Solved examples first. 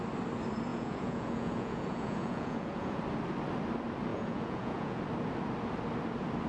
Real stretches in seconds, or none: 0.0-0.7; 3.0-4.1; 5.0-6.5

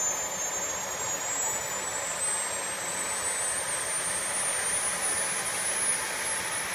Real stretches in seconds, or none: 0.0-6.7